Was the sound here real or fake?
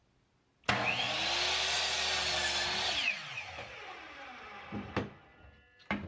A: real